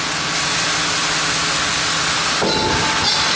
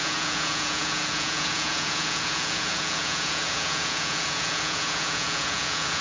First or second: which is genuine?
first